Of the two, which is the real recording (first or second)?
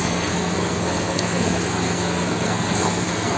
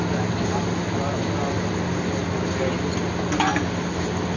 second